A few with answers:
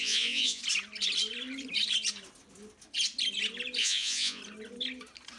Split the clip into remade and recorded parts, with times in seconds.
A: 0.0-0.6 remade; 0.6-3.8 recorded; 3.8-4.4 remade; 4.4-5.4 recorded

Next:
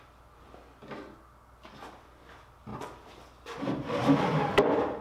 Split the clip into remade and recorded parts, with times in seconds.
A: 0.0-5.0 recorded

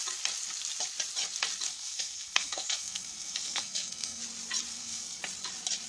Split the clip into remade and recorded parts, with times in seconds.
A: 0.0-1.7 recorded; 1.7-4.2 remade; 4.2-4.7 recorded; 4.7-5.2 remade; 5.2-5.9 recorded

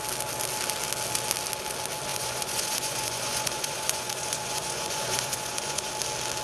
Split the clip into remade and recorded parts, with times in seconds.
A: 0.0-2.1 recorded; 2.1-5.9 remade; 5.9-6.4 recorded

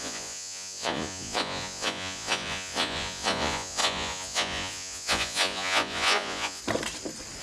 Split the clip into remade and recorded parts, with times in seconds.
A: 0.0-6.6 remade; 6.6-7.4 recorded

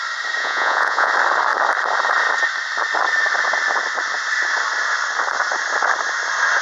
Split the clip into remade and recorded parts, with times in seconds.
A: 0.0-0.4 recorded; 0.4-1.1 remade; 1.1-6.6 recorded

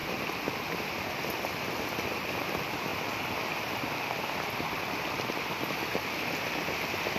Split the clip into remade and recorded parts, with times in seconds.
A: 0.0-7.2 recorded